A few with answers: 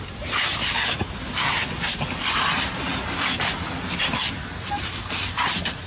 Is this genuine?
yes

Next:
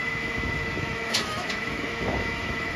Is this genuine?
no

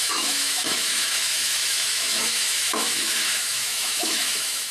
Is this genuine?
no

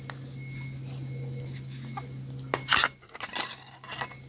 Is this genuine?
yes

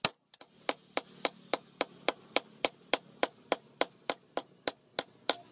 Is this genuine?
yes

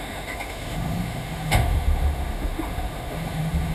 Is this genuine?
no